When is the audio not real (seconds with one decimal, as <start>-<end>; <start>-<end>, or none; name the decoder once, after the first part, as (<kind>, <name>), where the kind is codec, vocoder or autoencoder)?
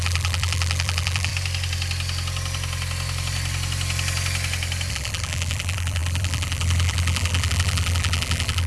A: 0.0-1.3 (vocoder, BigVGAN v2); 4.9-8.7